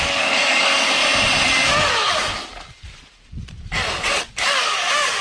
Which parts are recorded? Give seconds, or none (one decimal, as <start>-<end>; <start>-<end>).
1.0-1.9; 2.4-4.2